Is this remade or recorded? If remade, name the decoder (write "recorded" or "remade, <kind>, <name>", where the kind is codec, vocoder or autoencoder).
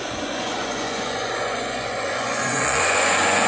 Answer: remade, vocoder, Vocos